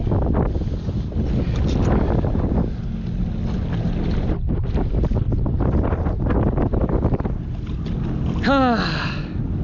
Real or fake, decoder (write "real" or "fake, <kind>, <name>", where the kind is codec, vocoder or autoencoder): real